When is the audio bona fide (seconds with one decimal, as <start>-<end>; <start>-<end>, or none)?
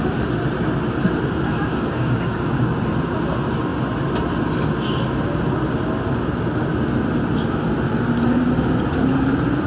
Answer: 0.0-1.7; 2.8-9.7